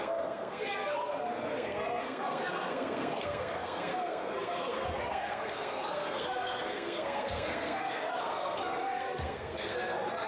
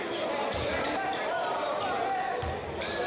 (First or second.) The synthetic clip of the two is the first